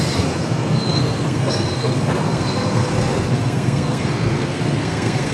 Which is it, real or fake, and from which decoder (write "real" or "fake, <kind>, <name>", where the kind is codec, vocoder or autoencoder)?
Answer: fake, codec, SNAC